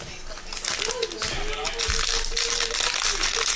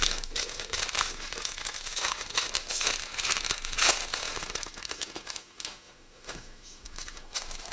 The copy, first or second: second